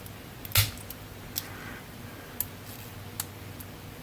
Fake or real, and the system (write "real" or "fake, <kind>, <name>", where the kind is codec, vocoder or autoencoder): real